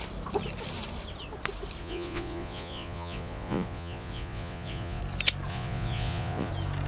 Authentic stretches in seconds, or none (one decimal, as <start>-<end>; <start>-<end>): 0.0-1.8; 5.0-5.5; 6.5-6.9